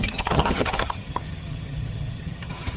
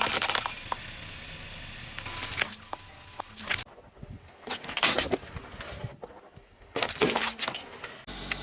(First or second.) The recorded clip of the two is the second